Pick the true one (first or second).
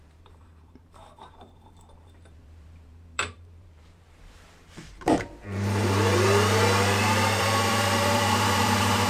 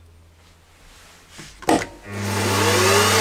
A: second